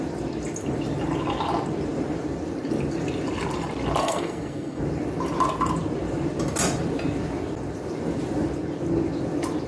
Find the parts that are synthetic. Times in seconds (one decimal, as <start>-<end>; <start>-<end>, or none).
4.0-4.8